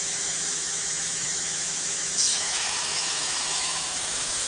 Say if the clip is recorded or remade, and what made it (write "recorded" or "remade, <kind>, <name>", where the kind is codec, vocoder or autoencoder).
remade, autoencoder, DAC-VAE